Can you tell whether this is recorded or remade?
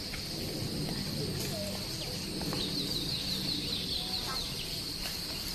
recorded